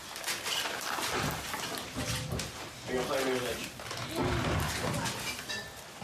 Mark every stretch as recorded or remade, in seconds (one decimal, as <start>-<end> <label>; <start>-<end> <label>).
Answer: 0.0-6.0 recorded